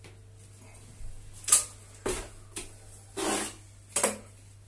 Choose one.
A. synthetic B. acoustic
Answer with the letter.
B